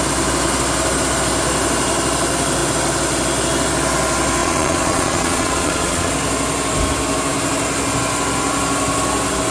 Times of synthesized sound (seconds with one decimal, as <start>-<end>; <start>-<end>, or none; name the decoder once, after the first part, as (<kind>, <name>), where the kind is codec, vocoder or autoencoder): 4.4-6.1 (vocoder, Vocos)